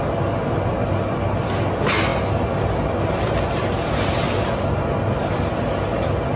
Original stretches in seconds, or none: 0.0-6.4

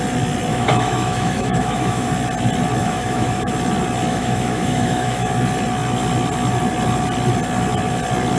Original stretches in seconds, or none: 0.0-0.5; 2.1-2.8; 3.5-4.1; 5.3-8.4

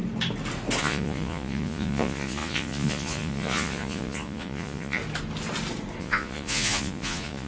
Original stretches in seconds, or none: 0.0-0.8; 5.0-6.0